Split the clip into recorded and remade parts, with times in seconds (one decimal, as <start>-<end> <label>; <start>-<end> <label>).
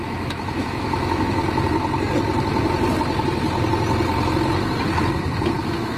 0.0-1.4 remade; 1.4-5.0 recorded; 5.0-6.0 remade